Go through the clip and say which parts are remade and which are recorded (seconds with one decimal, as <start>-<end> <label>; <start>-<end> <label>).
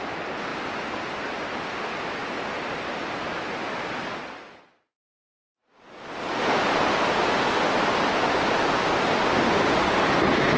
0.0-10.6 recorded